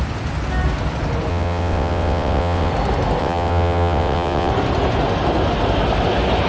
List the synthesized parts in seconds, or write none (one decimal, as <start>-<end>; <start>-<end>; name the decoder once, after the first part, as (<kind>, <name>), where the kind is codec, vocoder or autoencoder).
1.3-2.7 (vocoder, WaveNeXt); 3.2-4.5